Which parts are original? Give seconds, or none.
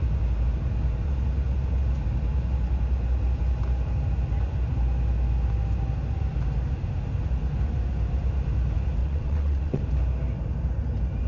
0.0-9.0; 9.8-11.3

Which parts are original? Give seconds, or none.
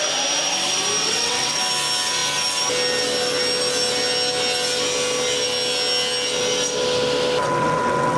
0.0-1.0; 1.6-7.4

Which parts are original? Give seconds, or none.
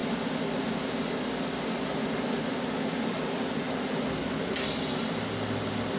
0.0-6.0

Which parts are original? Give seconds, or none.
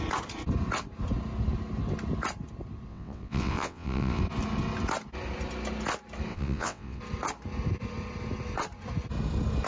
0.0-2.9; 4.2-6.3; 7.0-9.7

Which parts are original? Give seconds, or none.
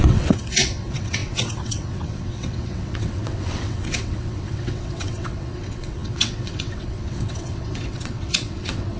none